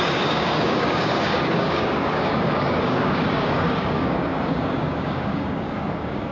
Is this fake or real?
fake